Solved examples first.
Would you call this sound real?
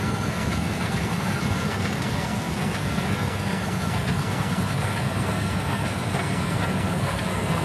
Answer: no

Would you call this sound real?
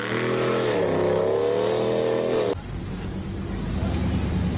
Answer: yes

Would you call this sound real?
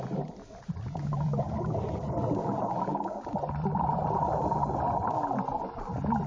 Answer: yes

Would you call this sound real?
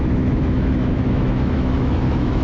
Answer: no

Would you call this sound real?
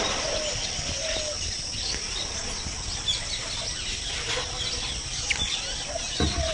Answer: yes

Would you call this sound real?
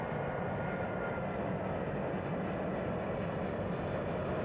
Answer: yes